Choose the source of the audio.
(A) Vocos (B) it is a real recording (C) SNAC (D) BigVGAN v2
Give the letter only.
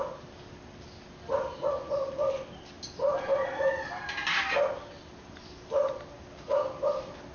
B